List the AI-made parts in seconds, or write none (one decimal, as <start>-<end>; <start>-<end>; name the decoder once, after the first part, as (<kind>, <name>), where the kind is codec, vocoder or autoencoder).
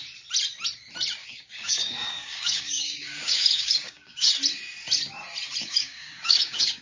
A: 1.2-4.3 (codec, DAC); 5.6-6.8